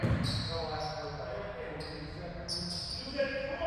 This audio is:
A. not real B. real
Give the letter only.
B